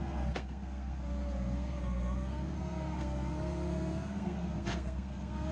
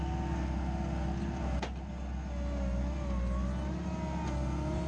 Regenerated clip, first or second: first